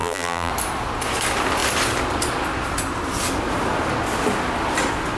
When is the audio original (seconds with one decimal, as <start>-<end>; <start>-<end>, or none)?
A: 0.5-5.2